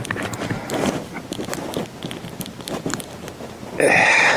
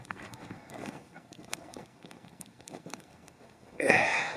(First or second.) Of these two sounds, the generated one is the second